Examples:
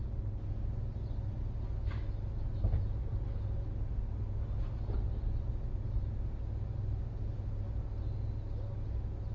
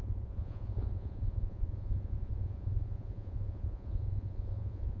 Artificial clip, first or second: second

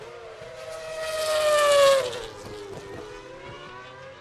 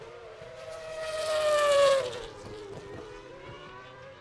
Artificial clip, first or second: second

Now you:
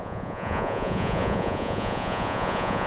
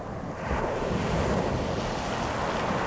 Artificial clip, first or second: first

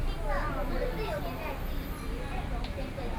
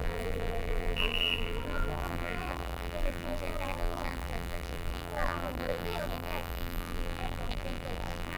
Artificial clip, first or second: second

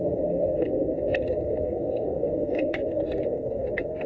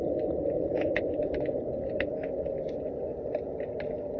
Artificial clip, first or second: first